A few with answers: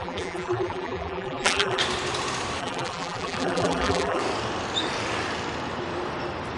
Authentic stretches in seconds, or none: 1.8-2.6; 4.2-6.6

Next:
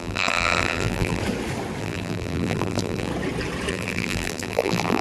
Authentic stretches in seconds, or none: 1.2-1.8; 3.1-3.7